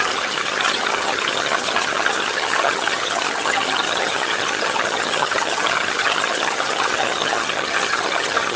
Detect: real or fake fake